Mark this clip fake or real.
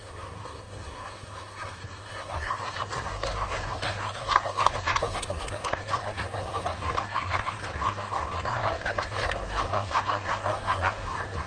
fake